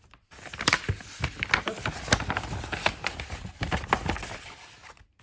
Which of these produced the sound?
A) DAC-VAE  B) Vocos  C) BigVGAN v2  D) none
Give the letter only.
D